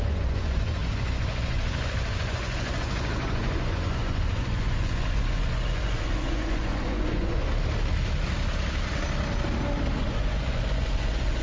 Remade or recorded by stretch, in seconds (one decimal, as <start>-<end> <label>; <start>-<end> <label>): 0.0-7.5 remade; 7.5-10.0 recorded; 10.0-11.4 remade